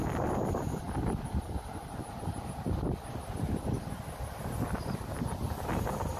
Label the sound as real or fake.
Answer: real